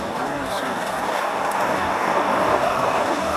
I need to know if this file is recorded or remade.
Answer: remade